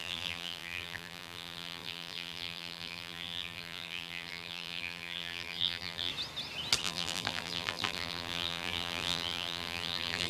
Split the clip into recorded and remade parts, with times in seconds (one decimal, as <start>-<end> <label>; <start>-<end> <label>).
0.0-6.1 remade; 6.1-6.8 recorded; 6.8-10.3 remade